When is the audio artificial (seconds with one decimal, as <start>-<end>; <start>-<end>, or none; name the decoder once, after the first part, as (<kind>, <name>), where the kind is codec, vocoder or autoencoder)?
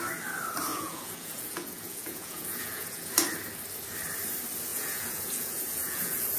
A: 0.7-3.1 (vocoder, Vocos); 4.7-6.4